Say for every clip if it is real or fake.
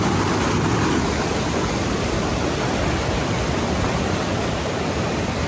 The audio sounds real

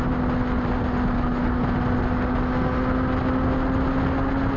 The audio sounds real